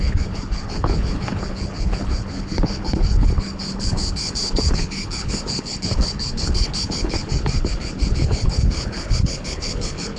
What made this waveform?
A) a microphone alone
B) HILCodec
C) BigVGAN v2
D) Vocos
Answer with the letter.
B